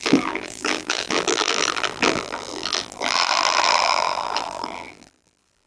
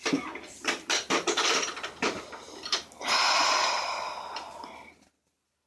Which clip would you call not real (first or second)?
first